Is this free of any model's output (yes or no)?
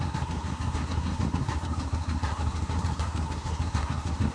no